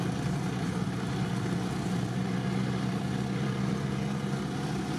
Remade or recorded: remade